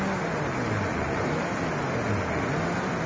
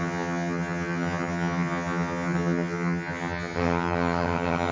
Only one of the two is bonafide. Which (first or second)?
first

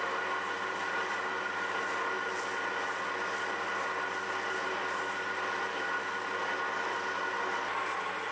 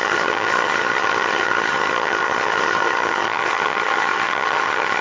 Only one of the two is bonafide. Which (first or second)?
first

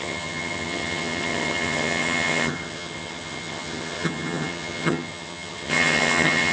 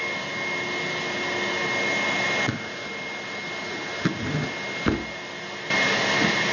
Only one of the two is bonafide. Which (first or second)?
second